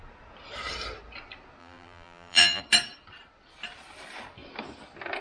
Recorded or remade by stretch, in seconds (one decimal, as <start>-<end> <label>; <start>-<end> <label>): 0.0-1.6 recorded; 1.6-2.6 remade; 2.6-5.2 recorded